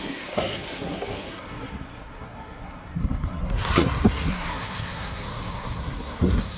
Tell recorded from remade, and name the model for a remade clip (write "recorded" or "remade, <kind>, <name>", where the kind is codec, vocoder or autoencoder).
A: remade, codec, SNAC